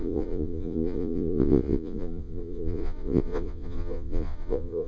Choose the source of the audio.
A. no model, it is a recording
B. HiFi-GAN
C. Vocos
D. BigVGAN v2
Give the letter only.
C